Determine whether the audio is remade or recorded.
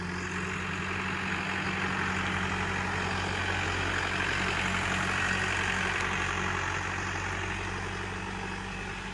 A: recorded